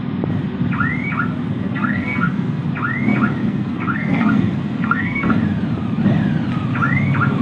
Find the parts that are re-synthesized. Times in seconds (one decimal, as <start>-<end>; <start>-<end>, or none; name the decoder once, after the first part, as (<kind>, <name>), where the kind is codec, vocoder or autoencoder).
1.5-2.6 (codec, SNAC); 3.4-5.3